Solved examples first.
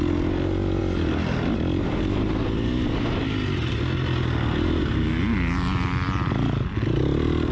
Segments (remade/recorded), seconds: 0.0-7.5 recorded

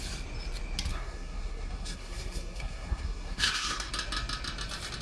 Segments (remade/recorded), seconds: 0.0-0.9 recorded; 0.9-3.9 remade; 3.9-5.0 recorded

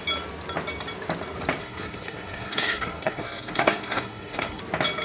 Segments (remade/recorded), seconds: 0.0-1.6 recorded; 1.6-4.6 remade; 4.6-5.0 recorded

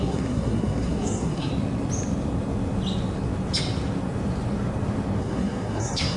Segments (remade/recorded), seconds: 0.0-1.5 remade; 1.5-5.2 recorded; 5.2-6.2 remade

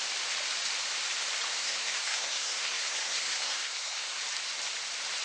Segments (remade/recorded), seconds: 0.0-1.6 recorded; 1.6-4.2 remade; 4.2-5.2 recorded

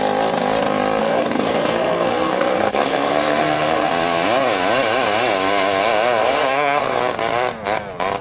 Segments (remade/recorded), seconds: 0.0-1.0 recorded; 1.0-3.9 remade; 3.9-6.2 recorded; 6.2-7.0 remade; 7.0-8.2 recorded

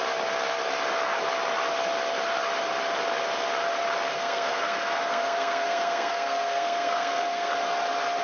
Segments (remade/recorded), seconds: 0.0-4.1 recorded; 4.1-7.5 remade; 7.5-8.2 recorded

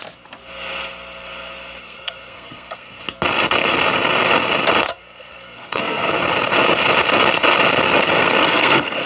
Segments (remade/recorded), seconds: 0.0-1.8 recorded; 1.8-3.0 remade; 3.0-4.9 recorded; 4.9-6.1 remade; 6.1-8.2 recorded; 8.2-9.1 remade